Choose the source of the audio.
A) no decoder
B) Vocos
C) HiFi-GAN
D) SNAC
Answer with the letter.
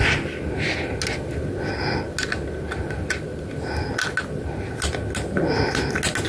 A